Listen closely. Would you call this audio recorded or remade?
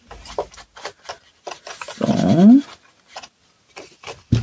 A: recorded